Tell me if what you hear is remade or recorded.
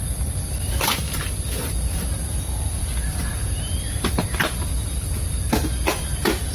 recorded